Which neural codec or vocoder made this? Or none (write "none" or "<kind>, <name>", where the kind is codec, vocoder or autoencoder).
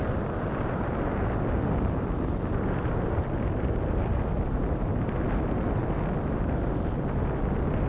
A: none